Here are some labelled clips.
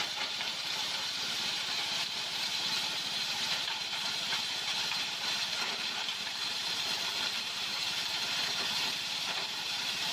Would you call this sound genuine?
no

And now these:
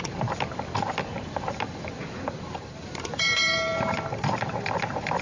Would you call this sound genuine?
no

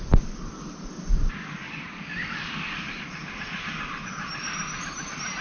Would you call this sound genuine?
no